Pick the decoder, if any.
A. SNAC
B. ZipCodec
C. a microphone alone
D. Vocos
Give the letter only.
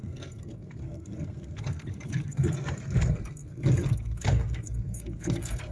A